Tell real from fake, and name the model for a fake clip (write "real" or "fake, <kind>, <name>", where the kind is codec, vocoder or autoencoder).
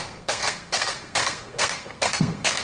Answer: fake, codec, SNAC